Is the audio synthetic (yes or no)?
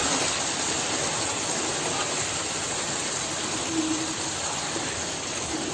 no